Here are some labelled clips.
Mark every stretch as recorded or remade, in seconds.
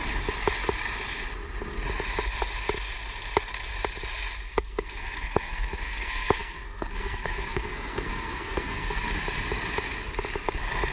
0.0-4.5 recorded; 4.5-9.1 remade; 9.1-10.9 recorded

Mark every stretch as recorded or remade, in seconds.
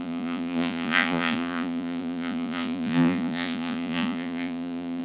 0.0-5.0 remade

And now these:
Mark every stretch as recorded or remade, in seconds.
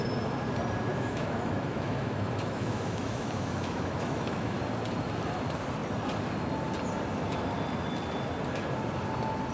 0.0-0.9 recorded; 0.9-4.6 remade; 4.6-9.5 recorded